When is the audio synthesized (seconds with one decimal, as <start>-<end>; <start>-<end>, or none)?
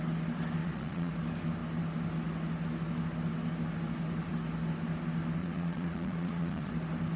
0.6-1.1; 5.4-6.7